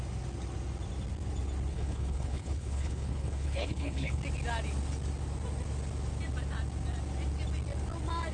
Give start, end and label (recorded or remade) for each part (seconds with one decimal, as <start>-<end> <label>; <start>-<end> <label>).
0.0-1.7 recorded; 1.7-4.2 remade; 4.2-8.3 recorded